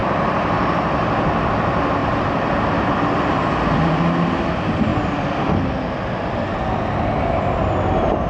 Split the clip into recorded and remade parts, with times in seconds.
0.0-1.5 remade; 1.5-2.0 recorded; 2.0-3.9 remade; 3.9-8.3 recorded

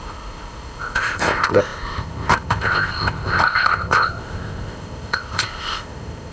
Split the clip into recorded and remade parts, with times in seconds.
0.0-6.3 remade

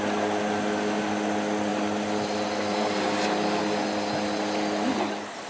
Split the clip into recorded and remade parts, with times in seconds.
0.0-5.5 recorded

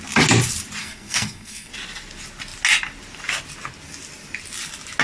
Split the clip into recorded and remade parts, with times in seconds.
0.0-0.8 recorded; 0.8-1.7 remade; 1.7-5.0 recorded